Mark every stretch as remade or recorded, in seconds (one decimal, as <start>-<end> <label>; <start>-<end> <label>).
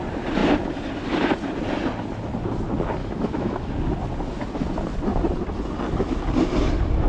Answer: 0.0-3.0 recorded; 3.0-3.7 remade; 3.7-7.1 recorded